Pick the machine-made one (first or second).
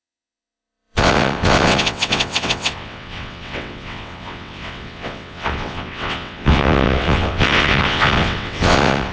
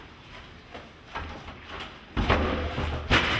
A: first